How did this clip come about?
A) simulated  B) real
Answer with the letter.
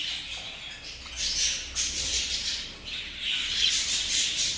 B